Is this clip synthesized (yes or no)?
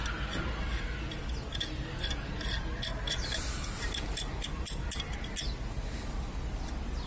no